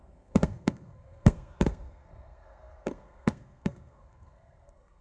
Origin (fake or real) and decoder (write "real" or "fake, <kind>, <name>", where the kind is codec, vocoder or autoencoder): fake, codec, SNAC